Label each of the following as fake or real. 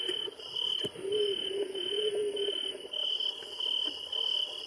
real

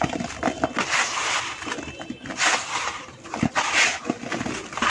real